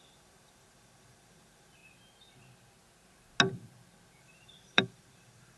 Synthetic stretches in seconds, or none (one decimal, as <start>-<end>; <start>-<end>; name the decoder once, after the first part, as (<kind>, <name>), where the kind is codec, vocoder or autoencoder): 0.0-1.8 (vocoder, BigVGAN v2); 4.2-5.6